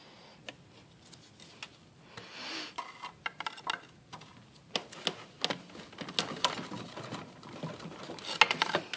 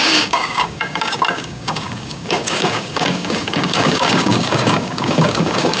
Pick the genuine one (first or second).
first